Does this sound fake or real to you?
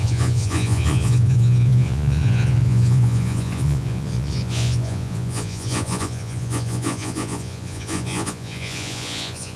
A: fake